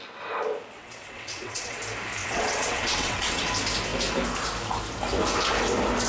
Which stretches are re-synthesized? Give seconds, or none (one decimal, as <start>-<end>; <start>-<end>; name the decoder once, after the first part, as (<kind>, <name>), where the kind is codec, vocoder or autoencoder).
0.8-1.8 (vocoder, WaveNeXt); 2.2-3.5